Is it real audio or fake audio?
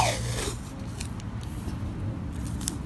real